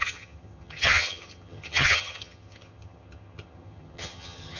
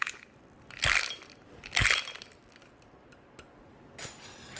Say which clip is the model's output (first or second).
first